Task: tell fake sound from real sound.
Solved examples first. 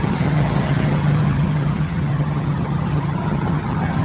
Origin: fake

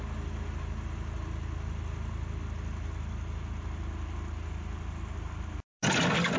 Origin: real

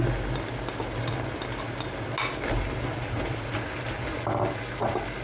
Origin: real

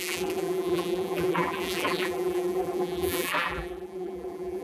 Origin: fake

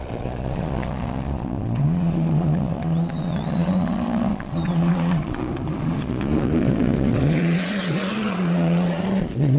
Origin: fake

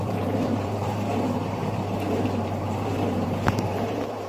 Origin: fake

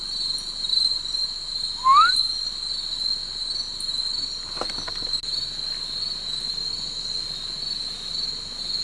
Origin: real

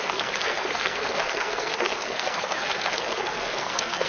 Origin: fake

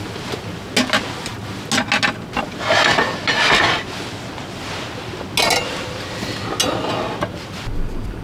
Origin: real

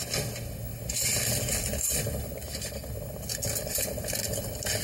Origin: real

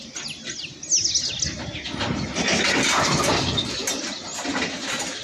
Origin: real